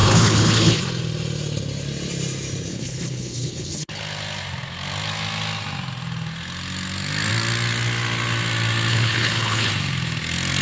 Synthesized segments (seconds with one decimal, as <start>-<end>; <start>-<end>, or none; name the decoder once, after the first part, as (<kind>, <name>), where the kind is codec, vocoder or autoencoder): 0.0-0.8 (codec, HILCodec); 2.7-4.0; 8.9-9.7